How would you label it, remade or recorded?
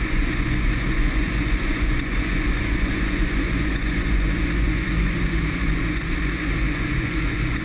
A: remade